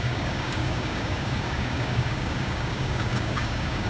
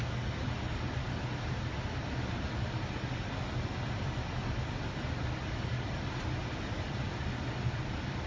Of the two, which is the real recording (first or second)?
second